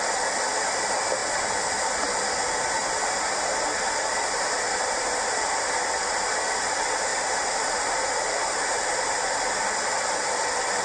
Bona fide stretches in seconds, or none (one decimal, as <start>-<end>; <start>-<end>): 0.0-2.8; 6.3-7.1; 8.8-10.8

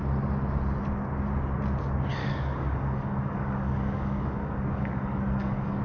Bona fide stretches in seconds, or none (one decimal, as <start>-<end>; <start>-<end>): 0.0-2.2

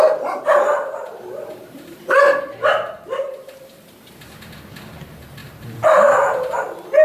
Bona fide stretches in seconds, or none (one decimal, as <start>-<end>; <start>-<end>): 0.0-5.4; 6.3-7.0

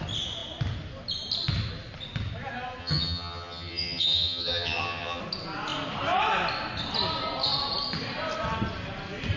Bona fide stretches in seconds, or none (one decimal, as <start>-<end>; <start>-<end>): 0.0-2.8; 5.2-9.4

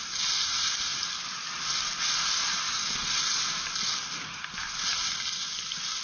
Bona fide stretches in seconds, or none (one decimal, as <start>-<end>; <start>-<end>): 0.0-6.0

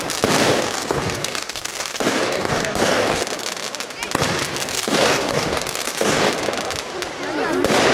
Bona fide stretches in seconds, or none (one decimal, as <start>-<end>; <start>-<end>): 0.0-0.4; 3.2-4.7; 6.3-7.9

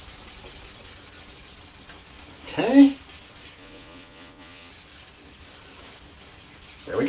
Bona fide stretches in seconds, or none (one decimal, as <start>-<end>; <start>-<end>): 0.0-3.6; 4.7-7.1

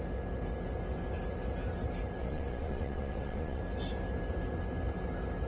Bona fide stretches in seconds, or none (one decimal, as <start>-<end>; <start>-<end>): 0.0-2.2; 3.6-5.5